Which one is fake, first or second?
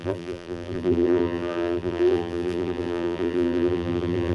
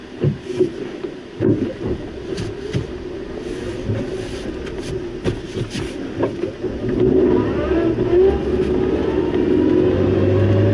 first